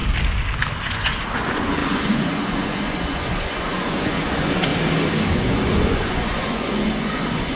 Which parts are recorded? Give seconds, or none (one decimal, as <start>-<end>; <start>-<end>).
0.0-0.8; 4.7-5.3